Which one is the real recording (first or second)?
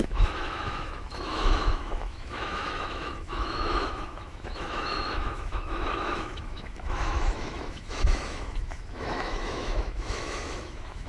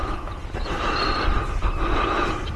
second